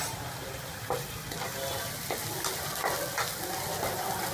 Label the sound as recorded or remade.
recorded